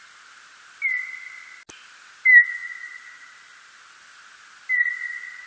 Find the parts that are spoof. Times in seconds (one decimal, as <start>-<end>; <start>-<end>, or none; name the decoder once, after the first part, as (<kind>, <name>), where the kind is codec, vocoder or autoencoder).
2.6-4.0 (vocoder, BigVGAN v2)